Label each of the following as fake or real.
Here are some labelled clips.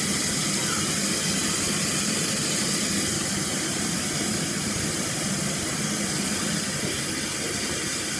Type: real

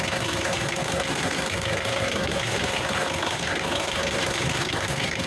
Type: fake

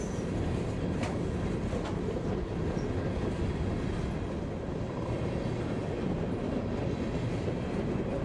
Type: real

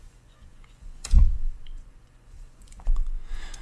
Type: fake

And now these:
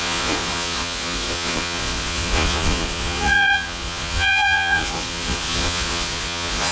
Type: fake